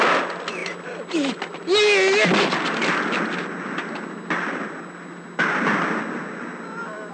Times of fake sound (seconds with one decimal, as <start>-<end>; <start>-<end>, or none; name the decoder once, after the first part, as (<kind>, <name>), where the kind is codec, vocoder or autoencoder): none